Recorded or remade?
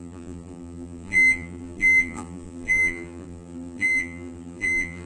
remade